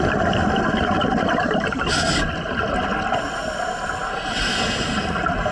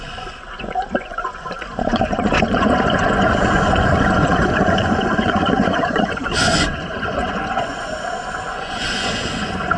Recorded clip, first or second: first